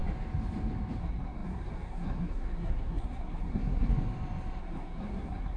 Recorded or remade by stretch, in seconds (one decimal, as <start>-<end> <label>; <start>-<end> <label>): 0.0-1.0 recorded; 1.0-3.9 remade; 3.9-4.6 recorded; 4.6-5.6 remade